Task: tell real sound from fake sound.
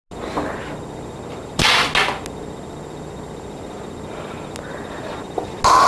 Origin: real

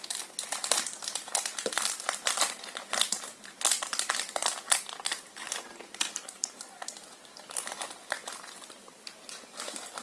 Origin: fake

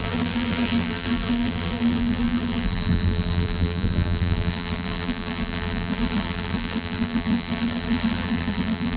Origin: fake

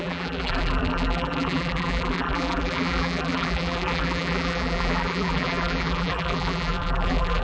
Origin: fake